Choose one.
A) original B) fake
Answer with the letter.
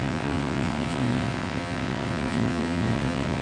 B